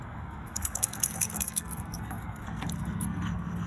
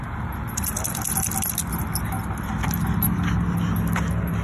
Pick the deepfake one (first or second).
first